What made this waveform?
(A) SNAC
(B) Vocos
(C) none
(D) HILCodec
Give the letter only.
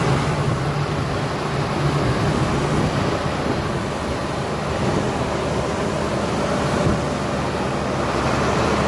C